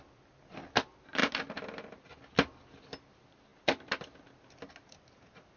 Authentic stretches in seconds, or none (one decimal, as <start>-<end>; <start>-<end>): 0.0-5.6